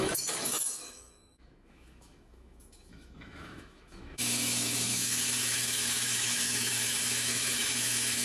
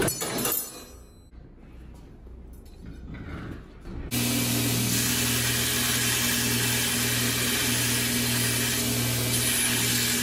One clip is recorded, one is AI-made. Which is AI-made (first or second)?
first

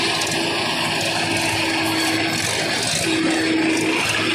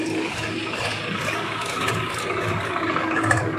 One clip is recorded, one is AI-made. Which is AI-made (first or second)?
second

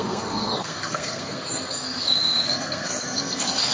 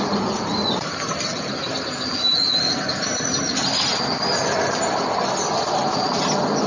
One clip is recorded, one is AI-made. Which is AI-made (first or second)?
first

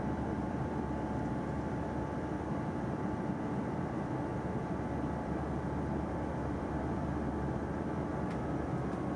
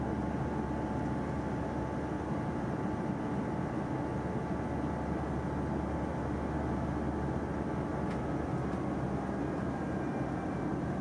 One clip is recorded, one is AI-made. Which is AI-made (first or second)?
first